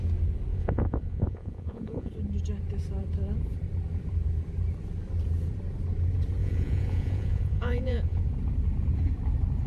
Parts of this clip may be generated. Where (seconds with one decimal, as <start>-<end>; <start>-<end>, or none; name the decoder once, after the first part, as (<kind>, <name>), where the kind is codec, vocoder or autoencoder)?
0.5-2.1 (vocoder, Vocos); 6.4-8.2